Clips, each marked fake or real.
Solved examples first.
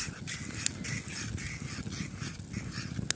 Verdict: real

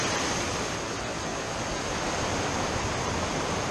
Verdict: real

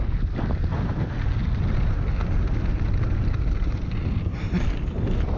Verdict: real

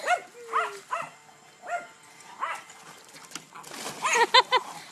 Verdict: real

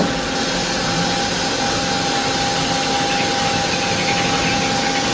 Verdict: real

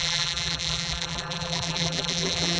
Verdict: fake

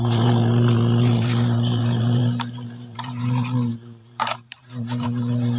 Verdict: fake